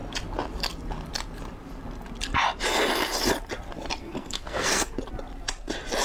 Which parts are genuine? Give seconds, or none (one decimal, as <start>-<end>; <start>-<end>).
0.0-4.0; 4.9-6.0